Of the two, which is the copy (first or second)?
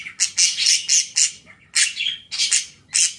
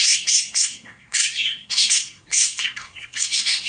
second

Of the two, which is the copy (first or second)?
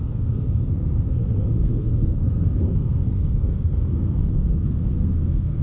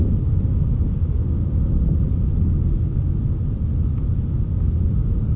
first